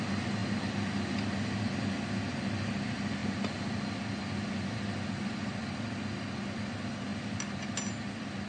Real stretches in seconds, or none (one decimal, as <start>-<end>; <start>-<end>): 0.0-8.5